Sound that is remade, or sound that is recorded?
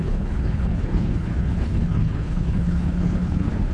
remade